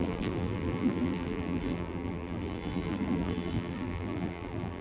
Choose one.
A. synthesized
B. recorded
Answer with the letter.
A